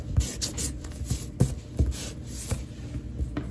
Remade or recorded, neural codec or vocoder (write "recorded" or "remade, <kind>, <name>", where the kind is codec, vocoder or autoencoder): recorded